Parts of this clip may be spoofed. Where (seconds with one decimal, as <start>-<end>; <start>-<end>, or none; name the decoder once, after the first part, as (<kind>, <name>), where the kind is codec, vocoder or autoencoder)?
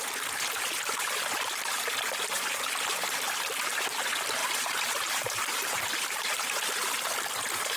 4.4-6.3 (vocoder, BigVGAN v2)